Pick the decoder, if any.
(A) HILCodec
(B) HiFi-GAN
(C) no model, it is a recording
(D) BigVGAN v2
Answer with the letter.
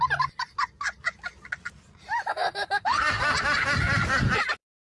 C